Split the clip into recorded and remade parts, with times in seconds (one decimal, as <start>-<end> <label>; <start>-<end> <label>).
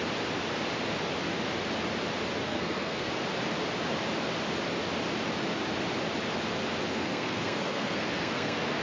0.0-2.4 recorded; 2.4-3.1 remade; 3.1-6.9 recorded; 6.9-8.8 remade